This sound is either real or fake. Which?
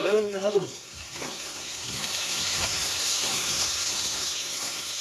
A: fake